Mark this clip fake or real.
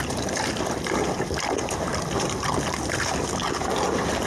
real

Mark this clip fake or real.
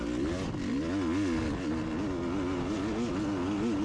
real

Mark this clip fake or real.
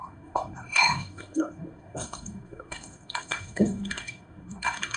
fake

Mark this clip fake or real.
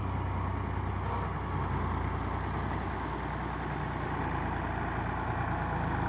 real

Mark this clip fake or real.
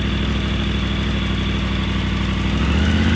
real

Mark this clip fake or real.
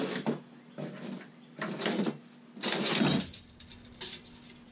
real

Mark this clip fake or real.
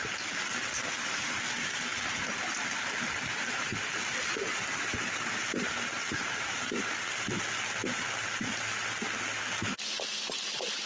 real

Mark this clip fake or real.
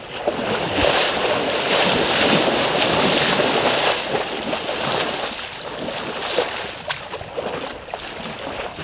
real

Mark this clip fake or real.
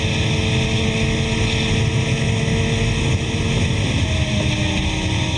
real